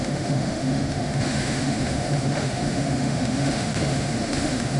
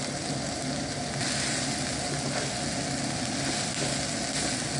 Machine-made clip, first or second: first